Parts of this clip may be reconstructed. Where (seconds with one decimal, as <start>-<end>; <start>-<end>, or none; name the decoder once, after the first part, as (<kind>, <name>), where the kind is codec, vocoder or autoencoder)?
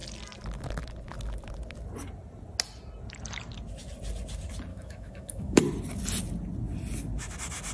4.7-5.6 (autoencoder, DAC-VAE)